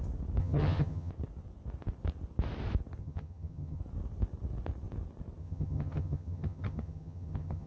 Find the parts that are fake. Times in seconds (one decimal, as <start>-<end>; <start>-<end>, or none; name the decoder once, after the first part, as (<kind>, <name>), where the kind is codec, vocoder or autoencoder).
0.4-1.1 (vocoder, HiFi-GAN); 3.0-3.8; 5.4-7.7